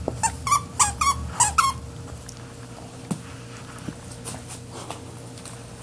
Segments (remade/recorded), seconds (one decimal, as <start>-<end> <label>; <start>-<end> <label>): 0.0-5.8 recorded